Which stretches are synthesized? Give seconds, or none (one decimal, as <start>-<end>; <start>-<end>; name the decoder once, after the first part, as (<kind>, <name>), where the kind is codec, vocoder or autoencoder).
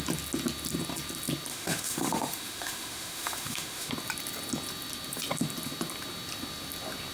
1.5-3.9 (autoencoder, DAC-VAE)